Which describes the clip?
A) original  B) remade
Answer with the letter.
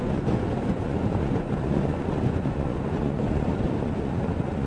B